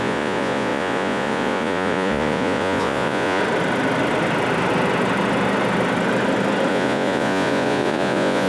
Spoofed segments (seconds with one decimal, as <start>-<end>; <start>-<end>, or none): 0.0-3.4; 6.7-8.5